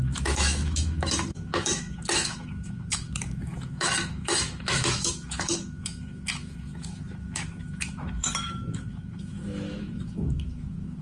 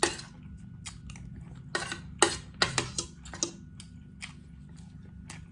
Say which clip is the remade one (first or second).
first